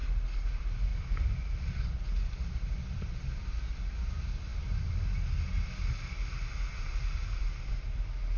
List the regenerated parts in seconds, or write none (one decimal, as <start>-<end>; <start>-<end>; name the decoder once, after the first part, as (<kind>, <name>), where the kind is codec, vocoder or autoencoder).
none